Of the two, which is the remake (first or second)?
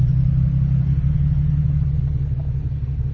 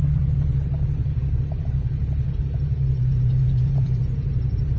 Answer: second